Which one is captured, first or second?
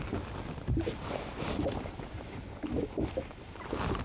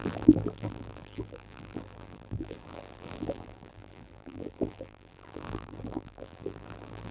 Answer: first